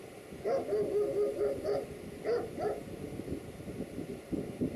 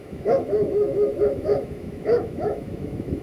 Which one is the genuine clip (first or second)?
first